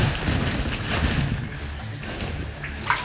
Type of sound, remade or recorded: recorded